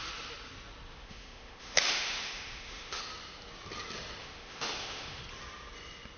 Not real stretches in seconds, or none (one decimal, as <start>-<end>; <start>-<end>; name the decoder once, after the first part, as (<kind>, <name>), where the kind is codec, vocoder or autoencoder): 0.9-3.0 (autoencoder, DAC-VAE); 4.2-5.2